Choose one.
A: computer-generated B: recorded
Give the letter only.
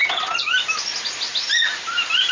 B